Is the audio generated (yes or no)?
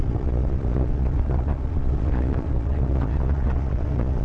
yes